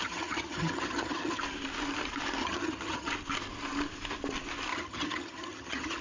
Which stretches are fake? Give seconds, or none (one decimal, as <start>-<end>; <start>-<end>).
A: 0.0-1.4; 2.4-3.1; 4.7-6.0